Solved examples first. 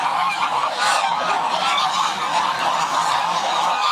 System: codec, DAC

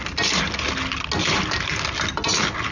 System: none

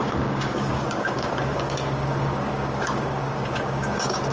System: codec, DAC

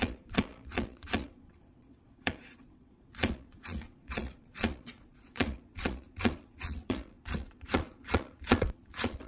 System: vocoder, Vocos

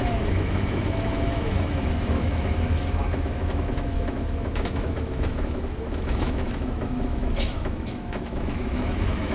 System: autoencoder, DAC-VAE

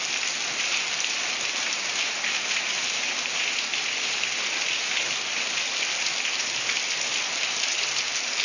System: none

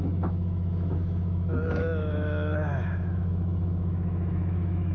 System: autoencoder, DAC-VAE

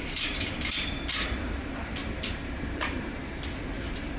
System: vocoder, BigVGAN v2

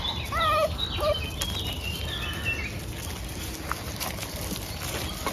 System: none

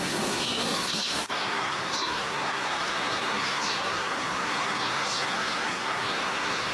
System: codec, SNAC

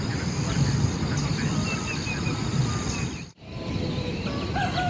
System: none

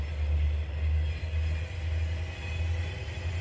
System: none